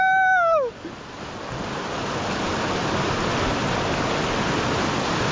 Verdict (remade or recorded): recorded